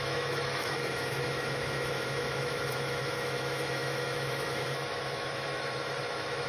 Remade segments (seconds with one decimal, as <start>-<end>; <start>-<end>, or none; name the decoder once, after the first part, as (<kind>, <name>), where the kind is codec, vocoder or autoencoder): 0.0-6.5 (autoencoder, DAC-VAE)